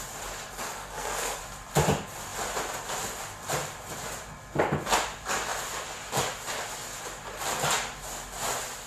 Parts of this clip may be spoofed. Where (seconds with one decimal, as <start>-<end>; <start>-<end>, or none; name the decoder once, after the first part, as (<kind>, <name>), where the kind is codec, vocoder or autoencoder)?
0.7-1.4 (codec, SNAC)